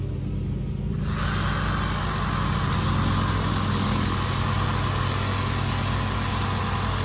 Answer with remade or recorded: recorded